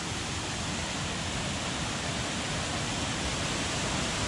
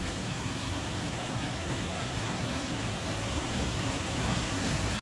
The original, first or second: first